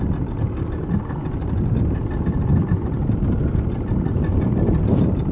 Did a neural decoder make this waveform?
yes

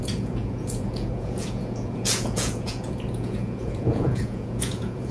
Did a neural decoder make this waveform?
yes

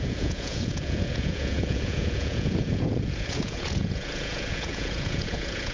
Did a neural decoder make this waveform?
yes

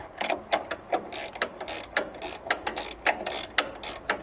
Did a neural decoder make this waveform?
no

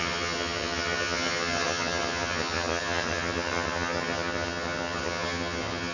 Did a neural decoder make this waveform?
yes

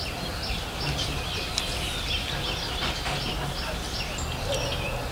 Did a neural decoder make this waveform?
no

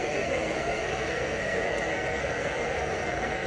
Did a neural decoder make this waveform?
yes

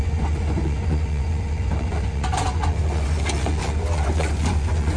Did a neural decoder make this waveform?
yes